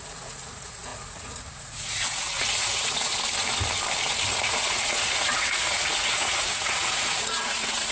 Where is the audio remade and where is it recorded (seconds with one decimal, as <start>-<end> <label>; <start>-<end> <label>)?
0.0-3.1 remade; 3.1-4.3 recorded; 4.3-7.9 remade